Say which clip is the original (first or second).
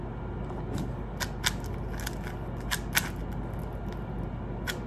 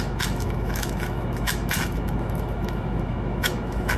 first